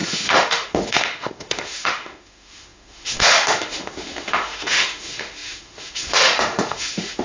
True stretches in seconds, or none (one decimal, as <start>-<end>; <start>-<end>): none